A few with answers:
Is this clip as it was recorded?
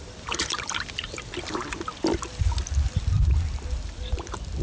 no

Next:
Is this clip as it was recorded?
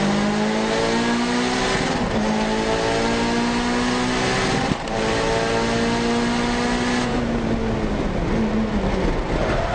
yes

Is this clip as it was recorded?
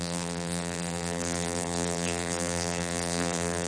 no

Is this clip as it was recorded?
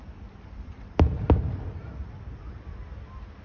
yes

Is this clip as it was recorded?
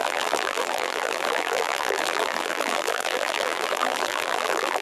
no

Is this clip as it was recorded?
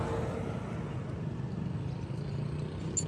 yes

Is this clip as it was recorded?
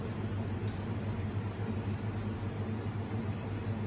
no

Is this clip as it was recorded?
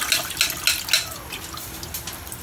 yes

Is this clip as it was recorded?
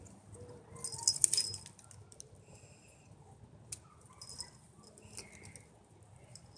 yes